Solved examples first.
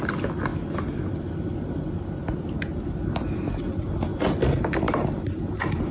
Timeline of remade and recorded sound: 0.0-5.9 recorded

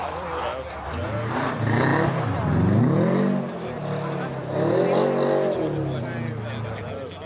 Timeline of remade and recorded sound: 0.0-7.3 recorded

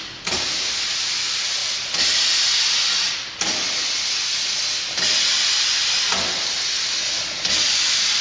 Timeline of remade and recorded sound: 0.0-8.2 recorded

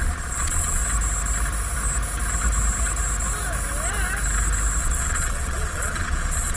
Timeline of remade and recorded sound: 0.0-0.8 remade; 0.8-4.8 recorded; 4.8-6.6 remade

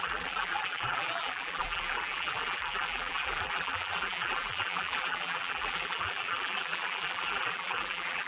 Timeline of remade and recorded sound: 0.0-8.3 remade

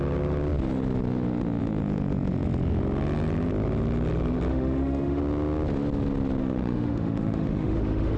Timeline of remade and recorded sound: 0.0-4.5 recorded; 4.5-5.2 remade; 5.2-6.4 recorded; 6.4-8.2 remade